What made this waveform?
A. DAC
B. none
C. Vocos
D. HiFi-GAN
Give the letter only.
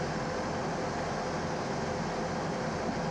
B